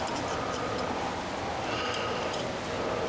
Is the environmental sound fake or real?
real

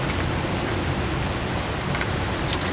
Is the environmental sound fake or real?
real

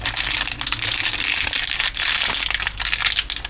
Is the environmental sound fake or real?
real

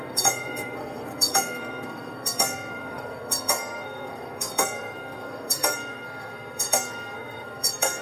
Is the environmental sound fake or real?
fake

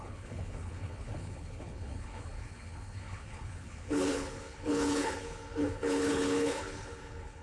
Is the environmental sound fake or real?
fake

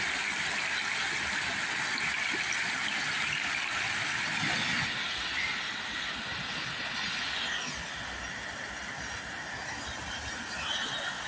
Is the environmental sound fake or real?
real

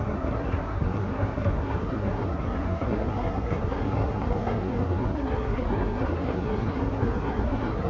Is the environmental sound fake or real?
fake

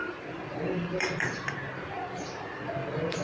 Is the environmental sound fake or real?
fake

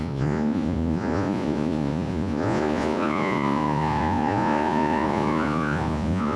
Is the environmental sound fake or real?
fake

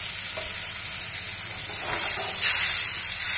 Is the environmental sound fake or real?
real